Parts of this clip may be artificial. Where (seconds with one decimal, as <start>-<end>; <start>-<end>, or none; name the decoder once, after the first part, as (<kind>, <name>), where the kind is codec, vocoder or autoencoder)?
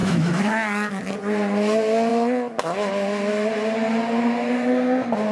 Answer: 0.0-1.0 (autoencoder, DAC-VAE)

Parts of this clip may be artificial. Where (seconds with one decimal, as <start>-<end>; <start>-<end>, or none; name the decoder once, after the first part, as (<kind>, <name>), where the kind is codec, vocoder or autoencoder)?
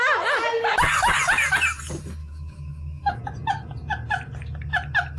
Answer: 2.2-3.2 (autoencoder, DAC-VAE)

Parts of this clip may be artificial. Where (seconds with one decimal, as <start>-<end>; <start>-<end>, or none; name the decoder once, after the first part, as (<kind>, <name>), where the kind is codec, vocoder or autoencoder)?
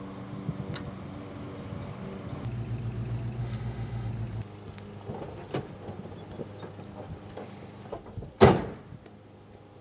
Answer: 3.4-4.1 (autoencoder, DAC-VAE)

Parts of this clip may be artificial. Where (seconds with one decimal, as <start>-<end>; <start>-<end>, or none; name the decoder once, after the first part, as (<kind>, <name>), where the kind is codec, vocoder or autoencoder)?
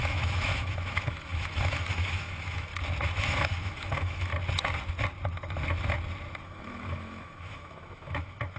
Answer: 0.0-2.7 (autoencoder, DAC-VAE); 3.3-4.3; 6.4-8.6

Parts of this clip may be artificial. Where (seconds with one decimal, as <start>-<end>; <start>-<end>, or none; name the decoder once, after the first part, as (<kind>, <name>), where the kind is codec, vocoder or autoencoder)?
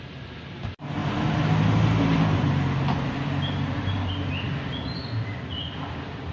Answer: none